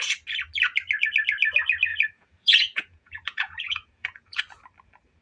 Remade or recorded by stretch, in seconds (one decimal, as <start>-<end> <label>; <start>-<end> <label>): 0.0-1.9 recorded; 1.9-4.4 remade; 4.4-5.2 recorded